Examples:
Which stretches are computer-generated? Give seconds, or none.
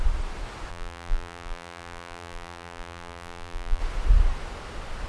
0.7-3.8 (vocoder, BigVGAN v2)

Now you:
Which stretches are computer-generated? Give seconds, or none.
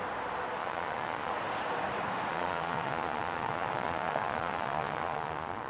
0.6-1.3 (vocoder, Vocos); 2.3-5.7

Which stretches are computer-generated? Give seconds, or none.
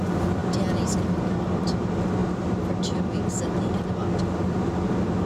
none